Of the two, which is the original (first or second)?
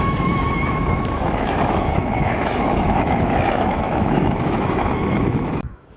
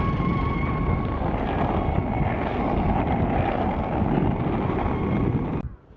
second